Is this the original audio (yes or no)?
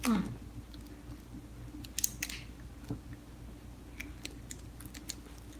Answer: yes